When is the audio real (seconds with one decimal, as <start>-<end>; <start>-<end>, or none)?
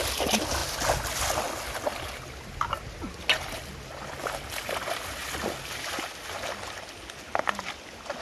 0.0-8.2